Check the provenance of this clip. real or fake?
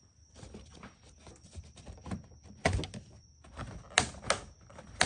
real